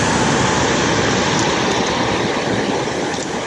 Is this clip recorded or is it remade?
recorded